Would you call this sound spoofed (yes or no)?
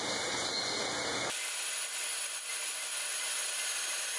no